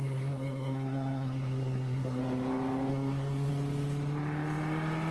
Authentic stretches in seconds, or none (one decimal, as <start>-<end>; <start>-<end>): 2.2-2.9; 3.5-5.1